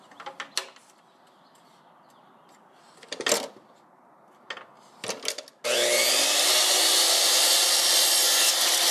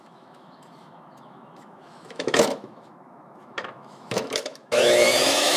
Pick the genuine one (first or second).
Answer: first